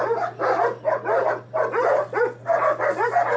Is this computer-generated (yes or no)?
no